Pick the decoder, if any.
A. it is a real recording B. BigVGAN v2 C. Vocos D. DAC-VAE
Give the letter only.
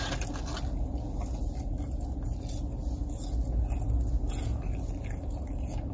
A